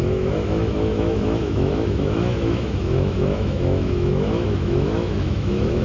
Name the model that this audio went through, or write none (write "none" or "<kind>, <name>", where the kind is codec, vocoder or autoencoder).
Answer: autoencoder, DAC-VAE